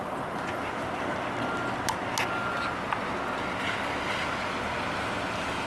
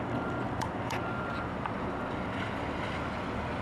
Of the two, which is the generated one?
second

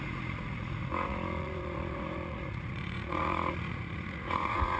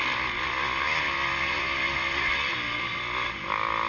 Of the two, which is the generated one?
first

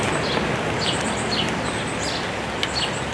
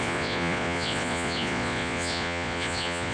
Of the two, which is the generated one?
second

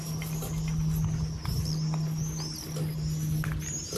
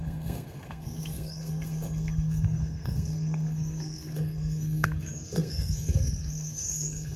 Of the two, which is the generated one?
second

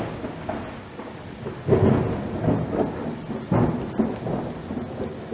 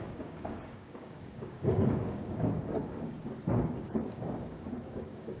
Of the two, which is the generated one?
second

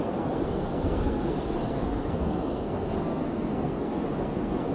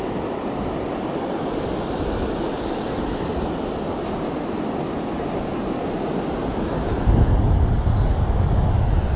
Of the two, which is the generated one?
first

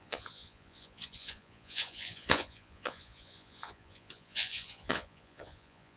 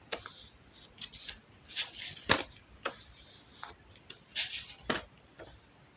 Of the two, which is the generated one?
first